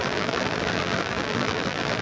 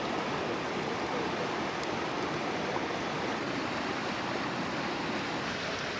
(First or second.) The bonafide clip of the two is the second